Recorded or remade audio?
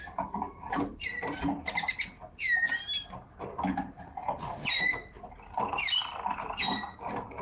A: recorded